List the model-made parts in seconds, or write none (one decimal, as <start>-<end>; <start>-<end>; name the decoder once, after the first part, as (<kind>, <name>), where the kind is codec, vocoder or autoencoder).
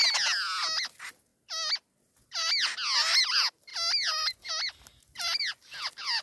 none